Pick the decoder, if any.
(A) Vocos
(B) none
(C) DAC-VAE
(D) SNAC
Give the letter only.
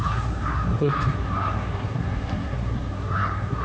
D